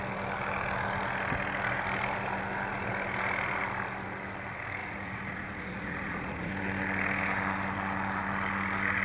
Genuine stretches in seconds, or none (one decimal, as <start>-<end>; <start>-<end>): 0.0-4.8; 6.5-9.0